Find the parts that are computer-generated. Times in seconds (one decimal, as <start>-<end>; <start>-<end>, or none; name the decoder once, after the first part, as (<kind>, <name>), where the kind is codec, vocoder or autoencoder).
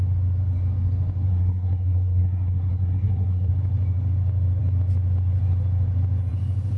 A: 1.3-3.5 (codec, SNAC)